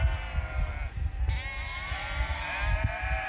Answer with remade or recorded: recorded